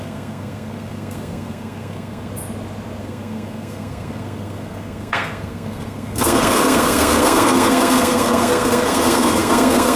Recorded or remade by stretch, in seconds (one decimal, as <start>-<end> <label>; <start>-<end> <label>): 0.0-2.3 remade; 2.3-3.0 recorded; 3.0-10.0 remade